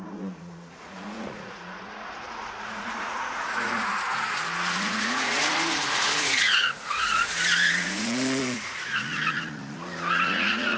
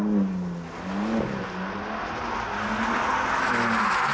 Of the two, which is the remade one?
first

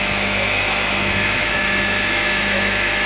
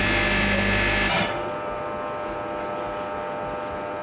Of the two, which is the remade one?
first